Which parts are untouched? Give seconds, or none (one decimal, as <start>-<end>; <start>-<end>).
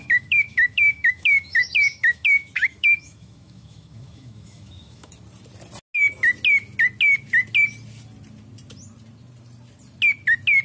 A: 5.1-10.6